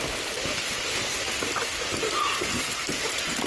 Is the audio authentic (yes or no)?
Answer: yes